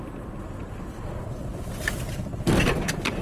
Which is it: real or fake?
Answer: fake